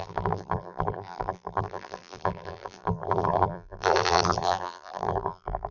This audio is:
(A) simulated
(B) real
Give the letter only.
A